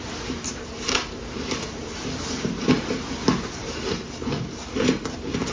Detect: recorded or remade remade